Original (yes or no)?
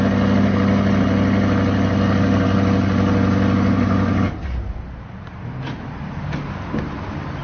yes